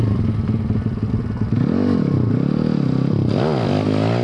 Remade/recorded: recorded